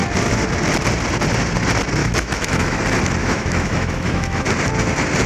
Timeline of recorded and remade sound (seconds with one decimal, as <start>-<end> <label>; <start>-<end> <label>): 0.0-2.0 recorded; 2.0-2.8 remade; 2.8-3.2 recorded; 3.2-4.5 remade; 4.5-5.3 recorded